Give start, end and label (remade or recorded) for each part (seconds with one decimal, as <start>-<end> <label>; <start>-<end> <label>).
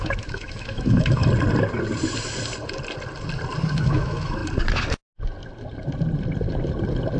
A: 0.0-1.2 remade; 1.2-3.6 recorded; 3.6-4.4 remade; 4.4-7.2 recorded